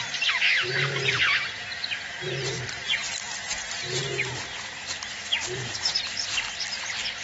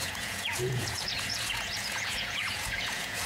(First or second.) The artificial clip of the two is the second